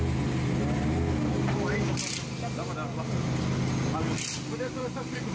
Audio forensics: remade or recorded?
recorded